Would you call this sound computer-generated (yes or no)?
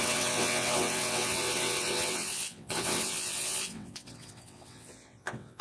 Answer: yes